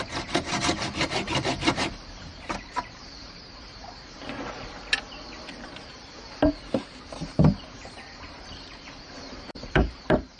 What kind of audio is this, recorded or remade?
remade